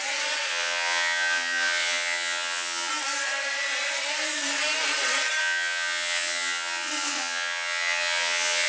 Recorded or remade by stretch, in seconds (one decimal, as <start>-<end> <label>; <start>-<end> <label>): 0.0-0.5 recorded; 0.5-2.9 remade; 2.9-5.4 recorded; 5.4-8.7 remade